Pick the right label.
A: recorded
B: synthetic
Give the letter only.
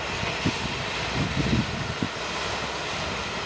A